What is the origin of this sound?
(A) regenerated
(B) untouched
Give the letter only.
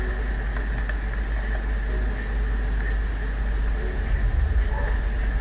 B